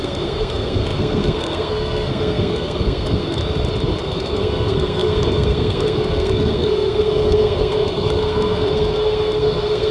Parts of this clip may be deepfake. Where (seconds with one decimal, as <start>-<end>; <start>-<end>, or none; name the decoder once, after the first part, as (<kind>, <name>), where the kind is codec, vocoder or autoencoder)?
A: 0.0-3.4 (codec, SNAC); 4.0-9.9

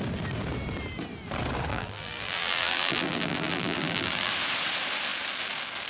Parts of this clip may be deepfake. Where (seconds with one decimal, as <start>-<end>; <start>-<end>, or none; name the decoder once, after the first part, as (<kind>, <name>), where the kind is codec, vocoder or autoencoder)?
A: 1.7-4.3 (vocoder, BigVGAN v2)

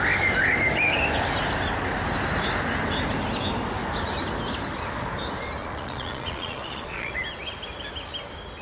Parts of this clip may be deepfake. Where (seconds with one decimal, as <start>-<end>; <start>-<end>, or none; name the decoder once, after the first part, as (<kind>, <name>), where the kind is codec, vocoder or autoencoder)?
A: 5.6-7.1 (vocoder, Vocos)